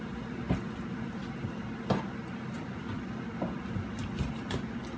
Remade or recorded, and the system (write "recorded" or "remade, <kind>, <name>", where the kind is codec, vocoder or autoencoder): recorded